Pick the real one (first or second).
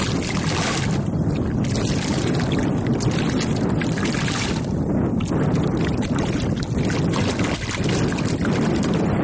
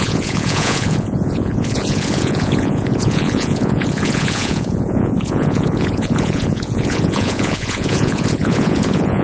first